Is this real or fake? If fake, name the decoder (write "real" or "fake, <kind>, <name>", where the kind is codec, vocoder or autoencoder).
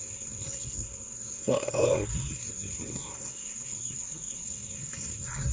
fake, codec, SNAC